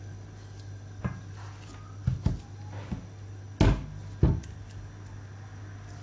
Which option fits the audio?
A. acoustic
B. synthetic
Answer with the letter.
A